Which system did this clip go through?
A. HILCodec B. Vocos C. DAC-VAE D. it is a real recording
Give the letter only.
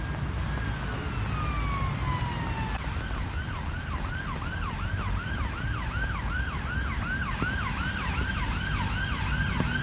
D